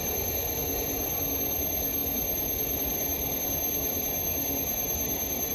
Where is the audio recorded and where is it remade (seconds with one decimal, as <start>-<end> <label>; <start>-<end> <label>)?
0.0-5.5 recorded